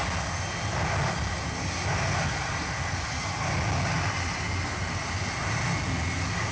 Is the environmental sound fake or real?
real